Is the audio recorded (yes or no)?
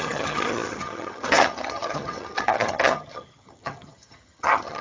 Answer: no